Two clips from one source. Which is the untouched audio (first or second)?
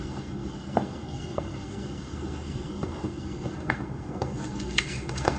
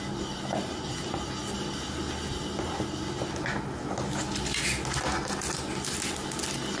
second